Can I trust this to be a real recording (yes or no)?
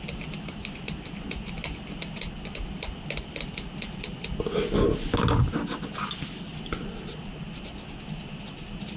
yes